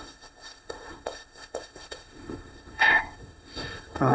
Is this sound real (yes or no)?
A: no